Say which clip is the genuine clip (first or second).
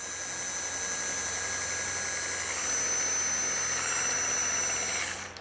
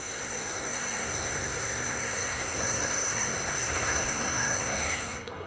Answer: first